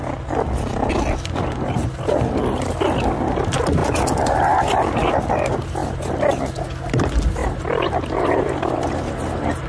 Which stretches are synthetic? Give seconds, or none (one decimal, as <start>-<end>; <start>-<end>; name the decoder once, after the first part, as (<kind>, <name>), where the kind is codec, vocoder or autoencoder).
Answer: 7.4-9.7 (vocoder, BigVGAN v2)